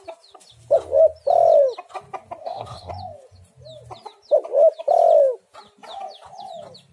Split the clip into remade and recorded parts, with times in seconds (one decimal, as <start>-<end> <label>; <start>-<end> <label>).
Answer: 0.0-2.4 recorded; 2.4-2.9 remade; 2.9-6.9 recorded